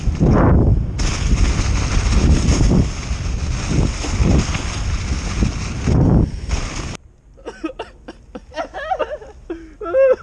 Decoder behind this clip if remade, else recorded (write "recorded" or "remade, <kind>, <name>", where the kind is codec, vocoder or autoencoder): recorded